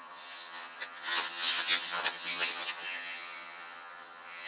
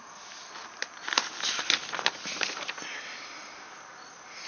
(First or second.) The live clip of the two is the second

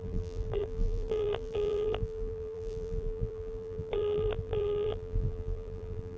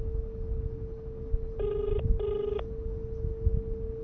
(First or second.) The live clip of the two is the second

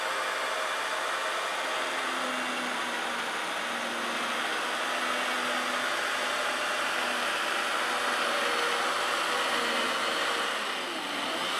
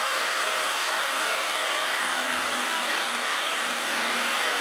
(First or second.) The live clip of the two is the first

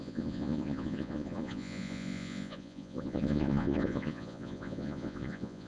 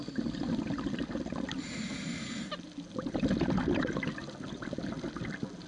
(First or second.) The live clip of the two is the second